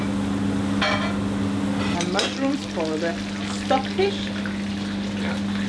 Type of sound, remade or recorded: recorded